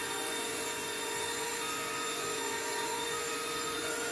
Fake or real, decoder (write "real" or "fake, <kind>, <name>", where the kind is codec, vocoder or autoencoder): fake, vocoder, Vocos